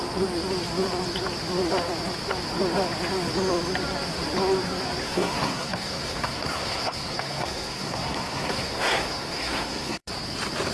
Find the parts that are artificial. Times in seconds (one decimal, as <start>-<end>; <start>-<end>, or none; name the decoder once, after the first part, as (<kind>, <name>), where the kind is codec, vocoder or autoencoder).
5.0-10.1 (codec, SNAC)